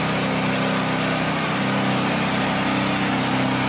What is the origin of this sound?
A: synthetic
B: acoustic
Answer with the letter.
B